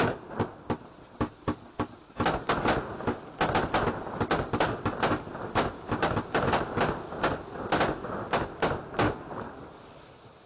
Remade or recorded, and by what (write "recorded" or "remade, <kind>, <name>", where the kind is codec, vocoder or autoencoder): recorded